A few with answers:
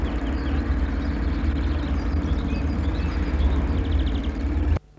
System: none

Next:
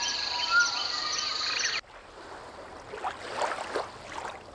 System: none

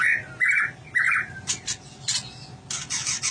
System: none